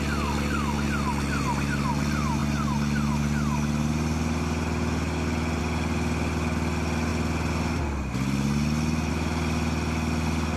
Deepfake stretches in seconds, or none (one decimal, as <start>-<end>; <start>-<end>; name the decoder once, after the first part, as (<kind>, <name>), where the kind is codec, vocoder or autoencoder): none